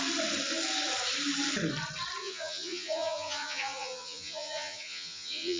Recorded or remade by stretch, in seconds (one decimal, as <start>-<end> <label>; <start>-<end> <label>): 0.0-2.2 recorded; 2.2-5.6 remade